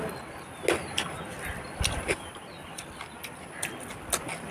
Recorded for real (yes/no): yes